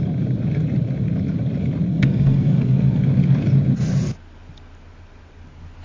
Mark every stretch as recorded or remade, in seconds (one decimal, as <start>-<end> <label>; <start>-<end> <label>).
0.0-1.9 recorded; 1.9-3.0 remade; 3.0-5.8 recorded